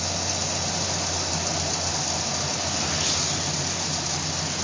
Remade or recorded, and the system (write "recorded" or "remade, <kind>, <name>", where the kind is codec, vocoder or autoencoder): recorded